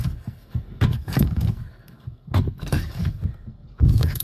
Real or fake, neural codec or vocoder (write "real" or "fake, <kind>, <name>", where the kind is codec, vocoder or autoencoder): fake, codec, SNAC